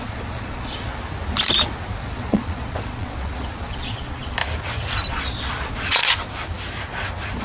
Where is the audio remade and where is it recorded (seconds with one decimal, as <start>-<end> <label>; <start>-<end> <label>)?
0.0-0.9 remade; 0.9-2.0 recorded; 2.0-4.4 remade; 4.4-5.1 recorded; 5.1-6.0 remade; 6.0-7.4 recorded